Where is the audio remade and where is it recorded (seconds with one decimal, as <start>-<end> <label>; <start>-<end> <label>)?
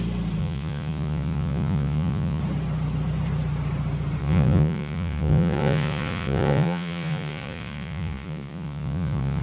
0.0-0.4 recorded; 0.4-2.4 remade; 2.4-4.2 recorded; 4.2-9.4 remade